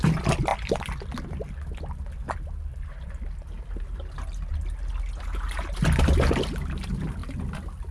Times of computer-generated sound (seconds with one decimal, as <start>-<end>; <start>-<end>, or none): none